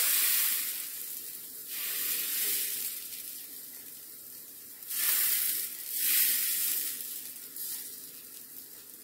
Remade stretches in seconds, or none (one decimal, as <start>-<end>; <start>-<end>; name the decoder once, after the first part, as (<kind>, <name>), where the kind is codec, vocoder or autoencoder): 1.6-6.7 (vocoder, BigVGAN v2)